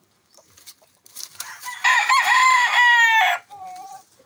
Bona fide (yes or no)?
no